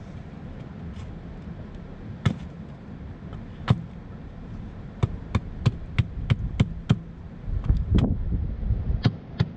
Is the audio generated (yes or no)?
no